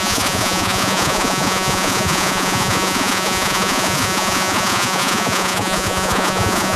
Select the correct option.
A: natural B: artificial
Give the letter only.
B